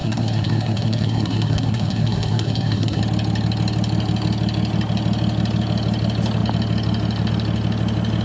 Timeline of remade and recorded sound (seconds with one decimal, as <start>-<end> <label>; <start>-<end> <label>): 0.0-3.0 remade; 3.0-8.2 recorded